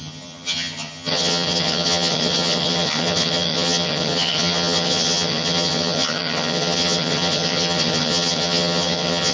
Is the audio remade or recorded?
remade